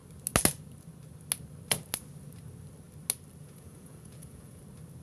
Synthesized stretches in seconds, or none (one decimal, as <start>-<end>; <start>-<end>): 3.4-4.6